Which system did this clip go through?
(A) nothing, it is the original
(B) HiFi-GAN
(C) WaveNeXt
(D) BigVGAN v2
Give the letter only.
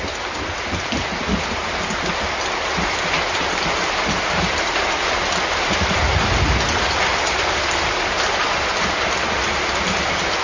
A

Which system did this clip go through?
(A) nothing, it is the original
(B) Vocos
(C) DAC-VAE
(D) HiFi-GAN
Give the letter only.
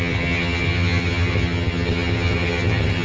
D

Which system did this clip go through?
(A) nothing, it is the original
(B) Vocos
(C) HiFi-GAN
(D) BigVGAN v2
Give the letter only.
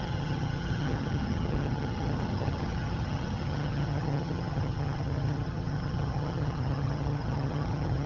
C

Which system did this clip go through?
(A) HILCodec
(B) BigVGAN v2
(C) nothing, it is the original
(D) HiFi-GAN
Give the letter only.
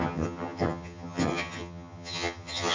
D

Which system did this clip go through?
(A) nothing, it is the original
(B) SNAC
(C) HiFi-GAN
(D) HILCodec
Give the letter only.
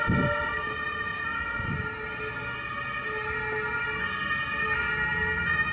A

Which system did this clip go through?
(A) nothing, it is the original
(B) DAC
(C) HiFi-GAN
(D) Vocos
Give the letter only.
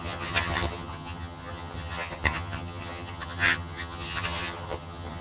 C